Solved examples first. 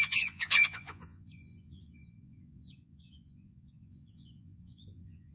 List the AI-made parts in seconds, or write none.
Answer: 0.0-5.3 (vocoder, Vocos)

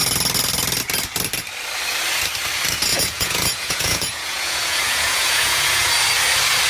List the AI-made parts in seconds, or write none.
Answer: 2.9-5.9 (vocoder, Vocos)

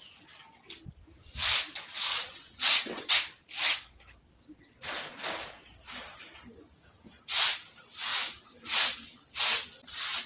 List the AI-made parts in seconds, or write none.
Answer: 2.1-3.1 (vocoder, WaveNeXt)

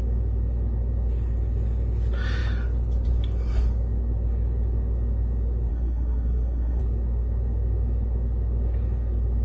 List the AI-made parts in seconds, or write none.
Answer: 5.7-6.8 (codec, SNAC)